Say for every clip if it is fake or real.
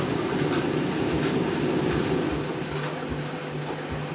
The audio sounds real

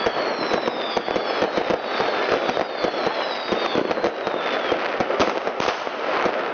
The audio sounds real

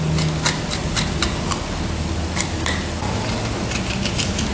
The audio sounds real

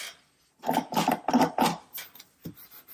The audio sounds real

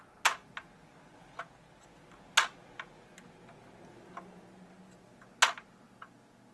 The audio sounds real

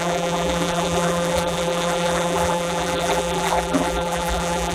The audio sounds fake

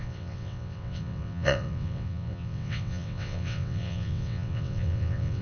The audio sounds fake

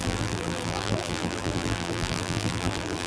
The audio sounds fake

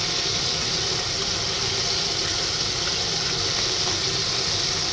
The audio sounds real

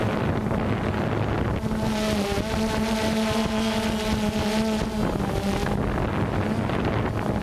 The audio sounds real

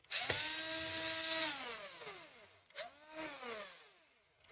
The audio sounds real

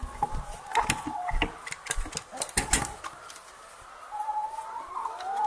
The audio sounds real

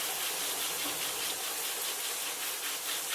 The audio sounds real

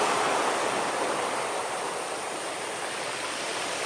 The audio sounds real